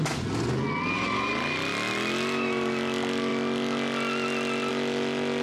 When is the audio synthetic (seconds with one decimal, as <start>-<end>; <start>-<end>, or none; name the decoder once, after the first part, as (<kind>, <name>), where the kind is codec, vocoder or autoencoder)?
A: none